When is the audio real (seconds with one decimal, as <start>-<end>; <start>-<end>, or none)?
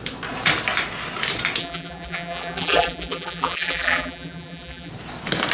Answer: 0.0-1.6; 4.9-5.5